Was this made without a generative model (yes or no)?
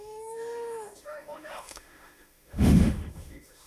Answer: no